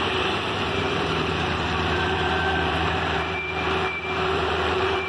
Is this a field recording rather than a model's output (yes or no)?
no